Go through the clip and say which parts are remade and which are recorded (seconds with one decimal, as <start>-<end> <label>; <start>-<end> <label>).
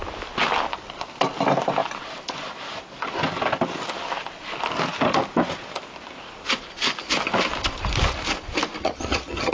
0.0-8.8 recorded; 8.8-9.5 remade